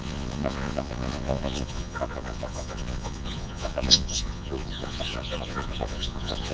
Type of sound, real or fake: fake